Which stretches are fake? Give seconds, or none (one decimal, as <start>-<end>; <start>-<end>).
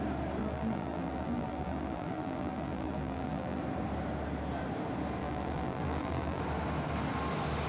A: 0.4-3.6; 5.2-6.4